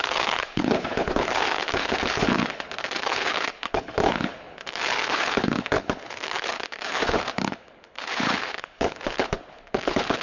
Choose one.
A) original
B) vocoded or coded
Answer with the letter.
B